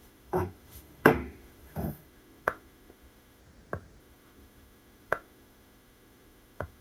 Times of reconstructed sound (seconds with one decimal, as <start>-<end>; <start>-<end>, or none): 0.0-3.4; 4.0-6.8